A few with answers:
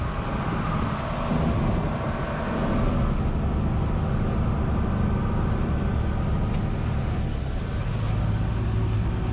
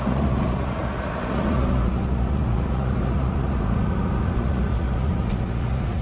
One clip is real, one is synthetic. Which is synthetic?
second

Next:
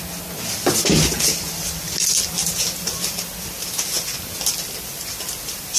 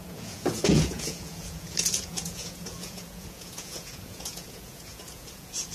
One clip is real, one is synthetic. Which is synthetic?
second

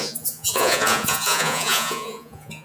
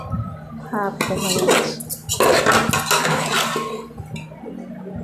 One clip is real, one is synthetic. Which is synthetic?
first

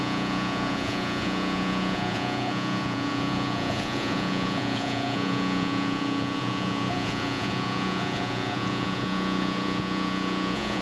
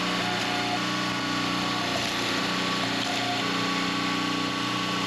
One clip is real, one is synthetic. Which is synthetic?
first